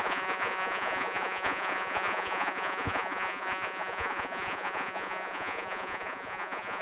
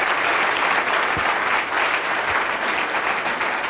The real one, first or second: second